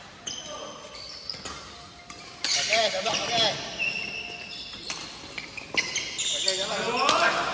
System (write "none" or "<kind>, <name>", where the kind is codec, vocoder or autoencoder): none